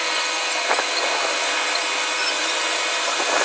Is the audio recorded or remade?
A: recorded